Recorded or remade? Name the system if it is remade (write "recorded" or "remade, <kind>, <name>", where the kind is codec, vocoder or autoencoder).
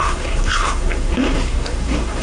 remade, codec, SNAC